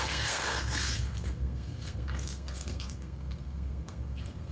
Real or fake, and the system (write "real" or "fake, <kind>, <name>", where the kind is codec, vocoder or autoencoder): fake, codec, SNAC